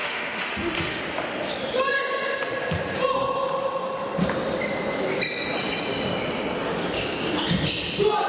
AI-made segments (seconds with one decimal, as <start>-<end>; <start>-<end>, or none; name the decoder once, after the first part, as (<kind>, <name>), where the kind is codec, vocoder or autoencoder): 0.0-1.0 (autoencoder, DAC-VAE)